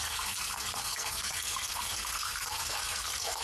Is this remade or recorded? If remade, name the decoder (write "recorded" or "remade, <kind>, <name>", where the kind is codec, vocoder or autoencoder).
remade, codec, SNAC